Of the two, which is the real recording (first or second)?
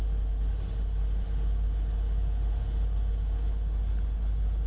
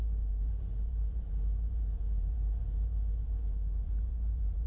first